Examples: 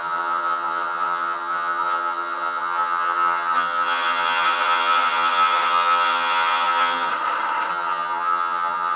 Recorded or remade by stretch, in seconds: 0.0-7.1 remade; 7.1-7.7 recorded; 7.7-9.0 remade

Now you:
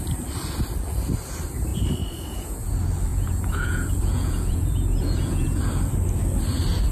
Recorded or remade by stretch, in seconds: 0.0-1.7 recorded; 1.7-2.7 remade; 2.7-3.1 recorded; 3.1-5.6 remade; 5.6-6.9 recorded

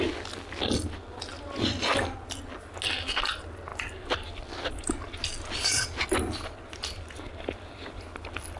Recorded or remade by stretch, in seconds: 0.0-8.6 recorded

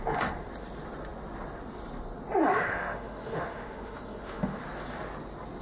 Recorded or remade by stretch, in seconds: 0.0-2.5 recorded; 2.5-4.6 remade; 4.6-5.6 recorded

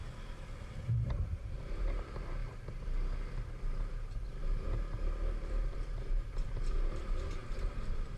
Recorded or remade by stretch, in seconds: 0.0-0.9 recorded; 0.9-2.4 remade; 2.4-6.8 recorded; 6.8-8.2 remade